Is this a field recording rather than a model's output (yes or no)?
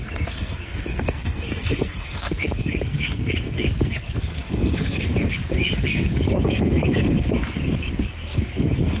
no